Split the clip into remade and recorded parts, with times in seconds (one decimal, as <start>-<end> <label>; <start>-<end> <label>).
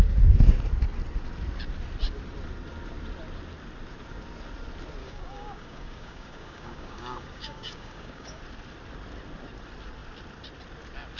0.0-5.0 recorded; 5.0-8.4 remade; 8.4-11.2 recorded